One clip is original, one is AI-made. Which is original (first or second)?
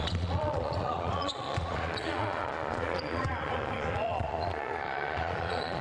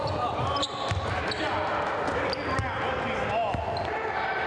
second